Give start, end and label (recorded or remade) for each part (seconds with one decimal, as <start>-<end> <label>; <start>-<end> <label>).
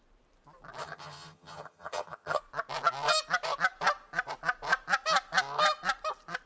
0.0-0.8 recorded; 0.8-2.4 remade; 2.4-6.5 recorded